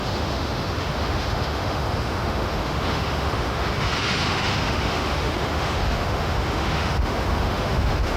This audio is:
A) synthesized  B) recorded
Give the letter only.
A